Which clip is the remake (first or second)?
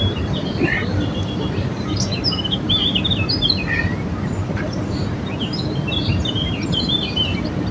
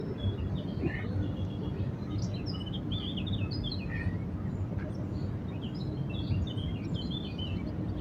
first